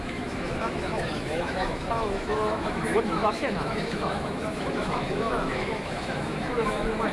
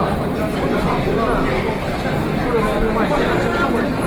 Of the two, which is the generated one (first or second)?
first